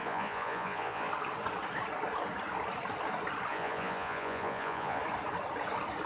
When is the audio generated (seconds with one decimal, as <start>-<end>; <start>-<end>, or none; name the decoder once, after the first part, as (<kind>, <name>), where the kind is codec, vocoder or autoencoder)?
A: 0.0-1.1 (vocoder, Vocos); 3.5-5.0